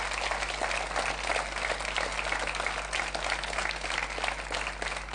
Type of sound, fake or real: real